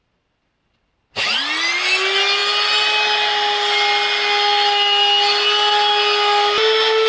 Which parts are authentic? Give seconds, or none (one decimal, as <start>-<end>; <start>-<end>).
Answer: 0.0-7.1